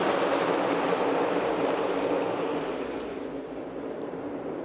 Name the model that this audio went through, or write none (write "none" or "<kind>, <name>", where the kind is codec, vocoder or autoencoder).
vocoder, BigVGAN v2